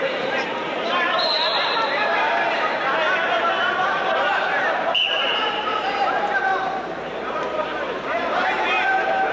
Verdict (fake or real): fake